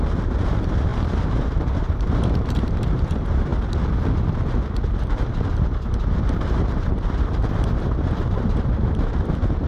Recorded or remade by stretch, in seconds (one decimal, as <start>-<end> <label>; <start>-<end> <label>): 0.0-3.5 remade; 3.5-5.5 recorded; 5.5-9.7 remade